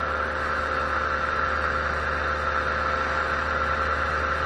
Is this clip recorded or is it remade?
recorded